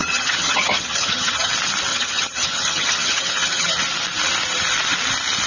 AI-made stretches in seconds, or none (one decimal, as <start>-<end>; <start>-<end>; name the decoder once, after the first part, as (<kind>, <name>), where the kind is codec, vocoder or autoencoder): 0.0-1.5 (vocoder, HiFi-GAN); 1.9-3.8